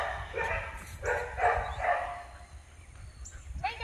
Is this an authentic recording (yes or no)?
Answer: yes